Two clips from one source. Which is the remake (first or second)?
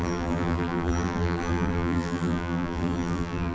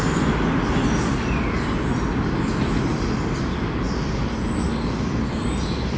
first